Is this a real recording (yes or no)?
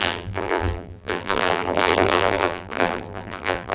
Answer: no